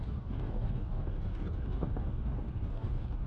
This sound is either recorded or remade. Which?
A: remade